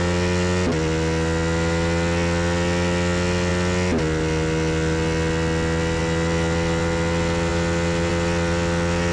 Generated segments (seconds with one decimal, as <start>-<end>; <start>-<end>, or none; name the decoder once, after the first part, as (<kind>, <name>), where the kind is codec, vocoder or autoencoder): none